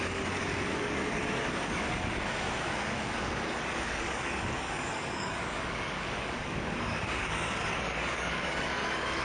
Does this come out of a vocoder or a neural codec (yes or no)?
yes